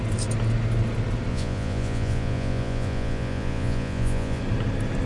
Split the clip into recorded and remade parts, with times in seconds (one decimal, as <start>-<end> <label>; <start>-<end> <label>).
0.0-1.3 recorded; 1.3-4.4 remade; 4.4-5.1 recorded